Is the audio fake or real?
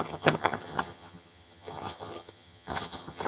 fake